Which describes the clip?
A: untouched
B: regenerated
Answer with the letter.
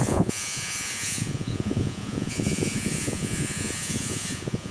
B